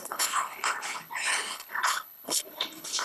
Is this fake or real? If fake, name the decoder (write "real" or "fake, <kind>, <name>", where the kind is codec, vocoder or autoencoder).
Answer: fake, codec, HILCodec